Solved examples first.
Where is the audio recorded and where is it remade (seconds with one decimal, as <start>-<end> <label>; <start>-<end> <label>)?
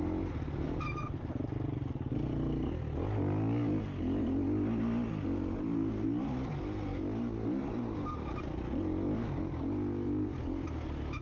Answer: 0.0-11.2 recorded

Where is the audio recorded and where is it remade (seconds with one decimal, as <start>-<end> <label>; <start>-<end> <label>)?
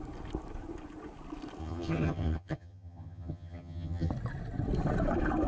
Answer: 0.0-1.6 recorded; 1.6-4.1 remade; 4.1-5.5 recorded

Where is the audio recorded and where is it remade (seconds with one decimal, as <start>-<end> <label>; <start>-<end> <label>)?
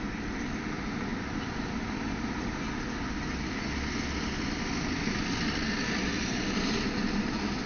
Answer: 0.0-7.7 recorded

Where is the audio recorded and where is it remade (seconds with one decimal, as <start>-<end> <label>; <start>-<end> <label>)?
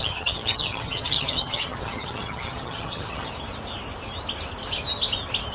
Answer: 0.0-3.3 remade; 3.3-5.5 recorded